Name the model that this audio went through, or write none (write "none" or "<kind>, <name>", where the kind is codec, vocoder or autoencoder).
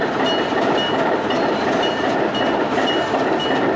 vocoder, BigVGAN v2